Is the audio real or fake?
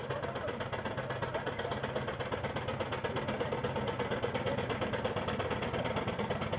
real